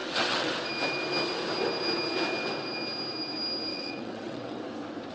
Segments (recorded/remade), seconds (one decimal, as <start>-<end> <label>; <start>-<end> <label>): 0.0-0.5 remade; 0.5-3.7 recorded; 3.7-4.6 remade; 4.6-5.1 recorded